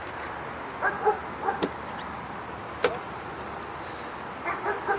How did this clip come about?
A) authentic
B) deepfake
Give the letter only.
A